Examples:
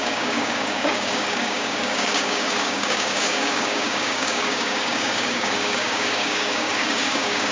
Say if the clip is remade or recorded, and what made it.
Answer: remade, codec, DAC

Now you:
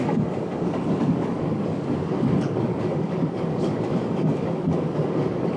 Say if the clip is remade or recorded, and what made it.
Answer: remade, codec, DAC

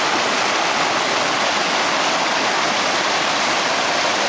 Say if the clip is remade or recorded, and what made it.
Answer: recorded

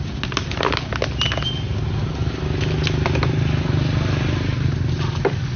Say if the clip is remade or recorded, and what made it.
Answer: recorded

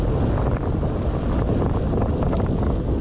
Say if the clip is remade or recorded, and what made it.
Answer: recorded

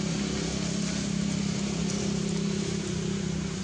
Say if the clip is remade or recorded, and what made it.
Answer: recorded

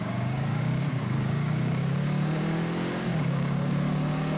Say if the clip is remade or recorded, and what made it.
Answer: remade, codec, DAC